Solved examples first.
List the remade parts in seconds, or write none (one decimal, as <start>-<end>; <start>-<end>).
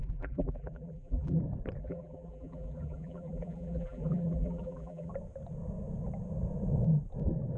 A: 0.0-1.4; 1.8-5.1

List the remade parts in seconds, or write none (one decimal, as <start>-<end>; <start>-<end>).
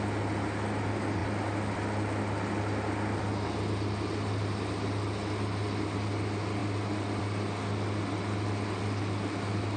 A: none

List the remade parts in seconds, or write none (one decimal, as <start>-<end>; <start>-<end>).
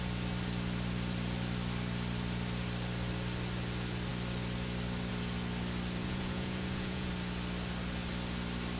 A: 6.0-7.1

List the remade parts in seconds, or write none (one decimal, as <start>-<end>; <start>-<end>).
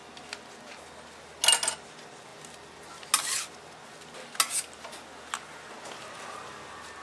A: none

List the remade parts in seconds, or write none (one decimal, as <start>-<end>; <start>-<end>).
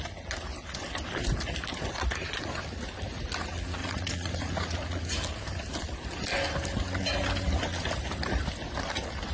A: 3.8-5.0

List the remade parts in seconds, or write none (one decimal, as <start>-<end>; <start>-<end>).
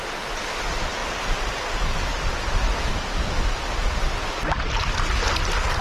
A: none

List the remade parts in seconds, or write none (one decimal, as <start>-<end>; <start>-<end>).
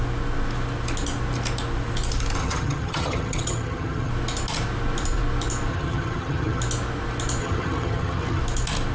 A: 2.4-4.1; 5.7-6.6; 7.4-8.4